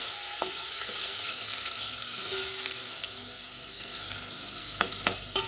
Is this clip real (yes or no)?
no